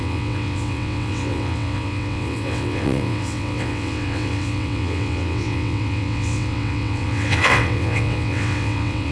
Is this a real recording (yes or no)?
no